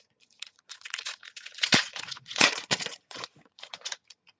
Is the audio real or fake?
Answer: fake